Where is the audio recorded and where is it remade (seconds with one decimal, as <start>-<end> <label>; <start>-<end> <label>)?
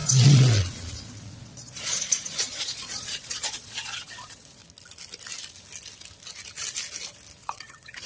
0.0-4.6 remade; 4.6-7.4 recorded; 7.4-8.1 remade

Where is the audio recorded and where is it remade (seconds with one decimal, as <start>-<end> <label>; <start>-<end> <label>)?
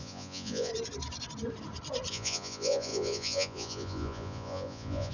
0.0-0.7 remade; 0.7-2.1 recorded; 2.1-5.1 remade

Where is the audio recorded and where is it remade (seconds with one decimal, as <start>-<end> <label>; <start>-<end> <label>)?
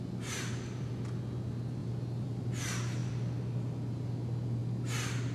0.0-1.8 recorded; 1.8-2.5 remade; 2.5-5.3 recorded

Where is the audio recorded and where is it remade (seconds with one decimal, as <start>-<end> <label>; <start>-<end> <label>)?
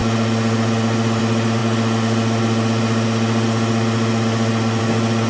0.0-5.3 recorded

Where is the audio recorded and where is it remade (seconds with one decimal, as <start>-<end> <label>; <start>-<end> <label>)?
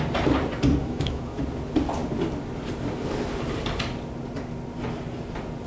0.0-0.8 recorded; 0.8-1.4 remade; 1.4-5.7 recorded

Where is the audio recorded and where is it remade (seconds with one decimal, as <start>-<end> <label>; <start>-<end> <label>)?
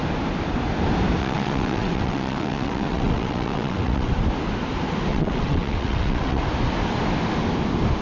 0.0-1.2 recorded; 1.2-4.1 remade; 4.1-5.1 recorded; 5.1-6.4 remade; 6.4-8.0 recorded